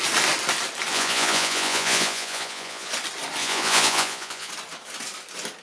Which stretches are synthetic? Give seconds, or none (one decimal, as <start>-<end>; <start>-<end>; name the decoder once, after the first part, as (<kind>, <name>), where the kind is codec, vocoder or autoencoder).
0.9-2.9 (vocoder, Vocos); 3.4-4.5